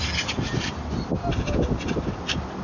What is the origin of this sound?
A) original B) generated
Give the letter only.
A